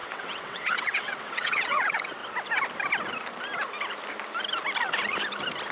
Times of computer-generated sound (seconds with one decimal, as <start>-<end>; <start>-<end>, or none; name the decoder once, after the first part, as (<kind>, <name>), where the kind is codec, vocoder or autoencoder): 0.0-2.2 (vocoder, WaveNeXt)